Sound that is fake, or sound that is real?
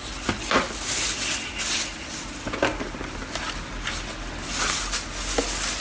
real